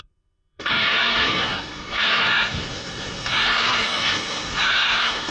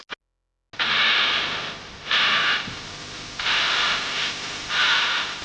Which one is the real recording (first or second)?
second